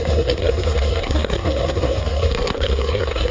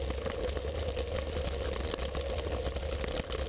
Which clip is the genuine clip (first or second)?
second